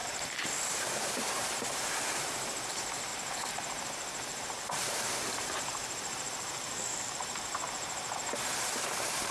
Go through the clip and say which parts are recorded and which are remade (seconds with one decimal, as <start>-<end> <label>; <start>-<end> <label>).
0.0-2.2 remade; 2.2-3.1 recorded; 3.1-8.3 remade; 8.3-9.3 recorded